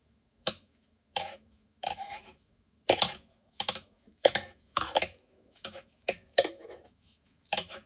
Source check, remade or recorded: remade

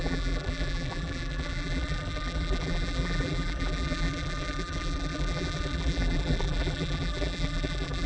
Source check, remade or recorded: remade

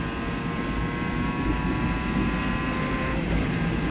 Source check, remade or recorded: recorded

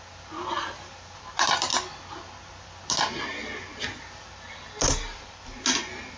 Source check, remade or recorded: recorded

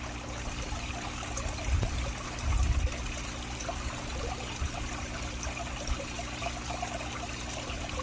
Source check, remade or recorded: recorded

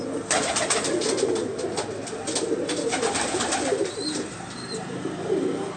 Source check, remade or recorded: recorded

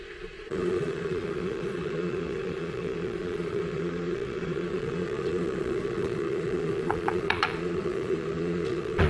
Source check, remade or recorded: remade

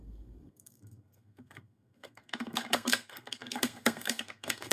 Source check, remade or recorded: remade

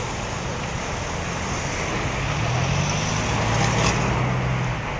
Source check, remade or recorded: recorded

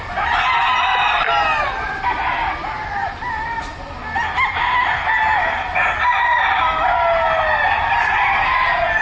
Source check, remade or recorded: recorded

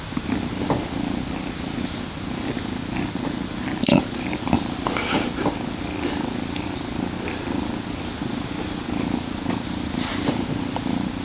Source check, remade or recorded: recorded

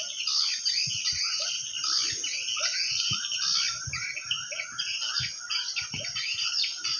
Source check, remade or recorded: recorded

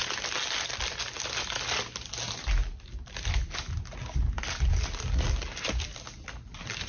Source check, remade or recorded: recorded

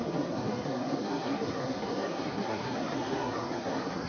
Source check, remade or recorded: remade